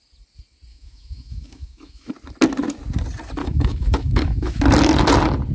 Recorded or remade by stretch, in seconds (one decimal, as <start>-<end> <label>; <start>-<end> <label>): 0.0-0.7 recorded; 0.7-2.1 remade; 2.1-3.4 recorded; 3.4-4.6 remade; 4.6-5.5 recorded